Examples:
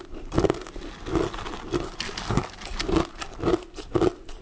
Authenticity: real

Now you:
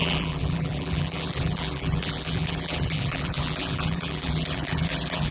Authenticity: fake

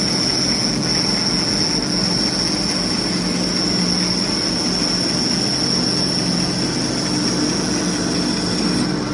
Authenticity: real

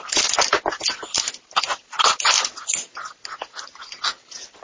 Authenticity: real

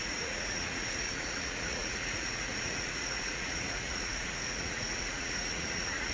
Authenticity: fake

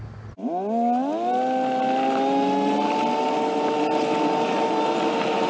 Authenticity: real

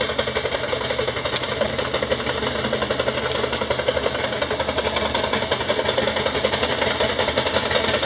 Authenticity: real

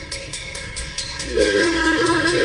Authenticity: fake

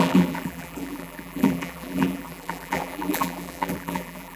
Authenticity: fake